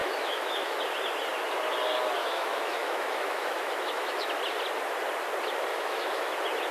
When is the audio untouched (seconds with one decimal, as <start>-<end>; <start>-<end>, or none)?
0.8-2.2; 4.3-5.7; 6.3-6.7